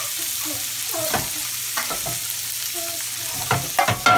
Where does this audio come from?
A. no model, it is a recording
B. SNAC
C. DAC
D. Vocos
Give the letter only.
A